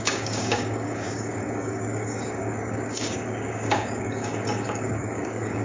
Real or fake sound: fake